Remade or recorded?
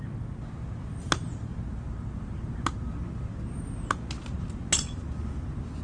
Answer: recorded